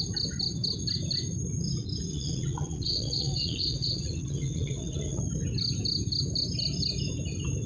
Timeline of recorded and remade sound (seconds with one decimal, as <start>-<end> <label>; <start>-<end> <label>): 0.0-2.1 recorded; 2.1-5.2 remade; 5.2-7.7 recorded